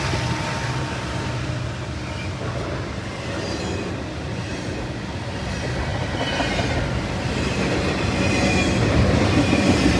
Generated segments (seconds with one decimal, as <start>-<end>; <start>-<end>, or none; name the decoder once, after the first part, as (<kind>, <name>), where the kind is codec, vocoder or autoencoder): none